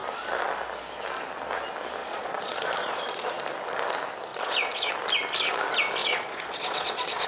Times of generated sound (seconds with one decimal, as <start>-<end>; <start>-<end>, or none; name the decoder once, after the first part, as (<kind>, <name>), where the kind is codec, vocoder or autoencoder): 2.0-3.4 (vocoder, Vocos); 4.3-4.9; 6.0-7.3